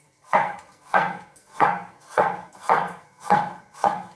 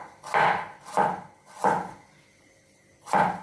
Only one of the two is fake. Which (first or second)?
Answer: first